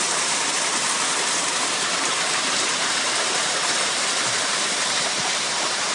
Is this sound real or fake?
fake